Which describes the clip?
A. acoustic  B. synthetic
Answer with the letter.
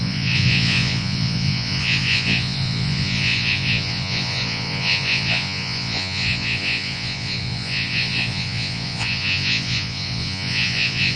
B